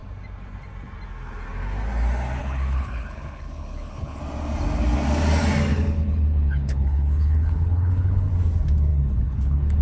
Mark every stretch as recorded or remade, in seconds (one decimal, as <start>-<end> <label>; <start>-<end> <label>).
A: 0.0-2.4 recorded; 2.4-4.2 remade; 4.2-5.7 recorded; 5.7-8.3 remade; 8.3-8.9 recorded; 8.9-9.8 remade